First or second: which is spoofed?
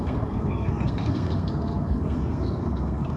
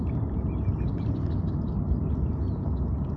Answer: first